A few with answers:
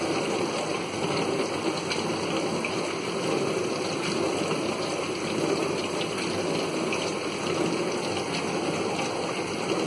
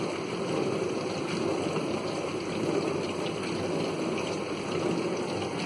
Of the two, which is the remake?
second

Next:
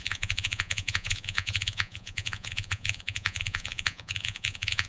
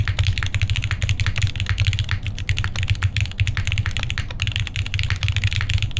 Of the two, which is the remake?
first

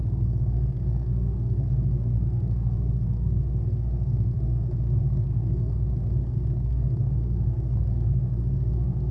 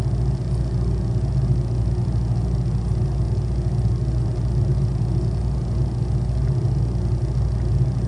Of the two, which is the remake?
first